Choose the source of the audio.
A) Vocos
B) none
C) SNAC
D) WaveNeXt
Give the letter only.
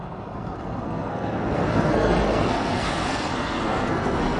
C